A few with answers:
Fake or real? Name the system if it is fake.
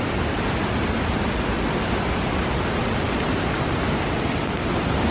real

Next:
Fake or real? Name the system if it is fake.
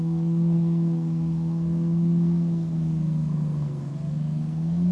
fake, codec, SNAC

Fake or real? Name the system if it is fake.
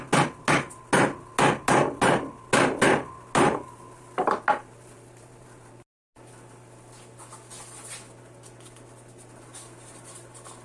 real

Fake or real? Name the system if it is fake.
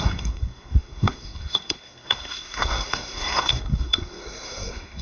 fake, codec, SNAC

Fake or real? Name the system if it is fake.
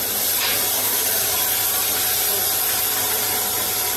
real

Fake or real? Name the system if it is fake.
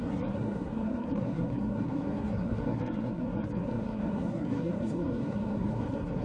fake, codec, SNAC